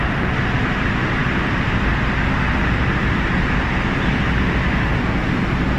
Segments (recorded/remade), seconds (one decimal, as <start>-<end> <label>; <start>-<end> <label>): 0.0-5.8 recorded